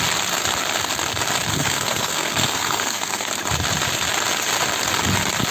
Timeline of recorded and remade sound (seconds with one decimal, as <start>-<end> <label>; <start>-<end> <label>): 0.0-1.5 recorded; 1.5-3.3 remade; 3.3-5.5 recorded